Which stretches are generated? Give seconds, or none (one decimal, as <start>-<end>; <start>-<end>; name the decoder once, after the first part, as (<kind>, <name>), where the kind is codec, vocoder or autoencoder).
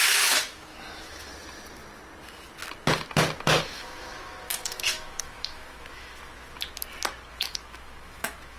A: 0.0-1.3 (autoencoder, DAC-VAE); 3.6-6.2; 7.3-8.6